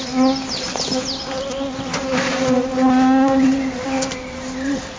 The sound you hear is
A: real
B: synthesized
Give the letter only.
A